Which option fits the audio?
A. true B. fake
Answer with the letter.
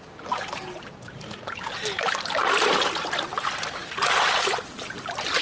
A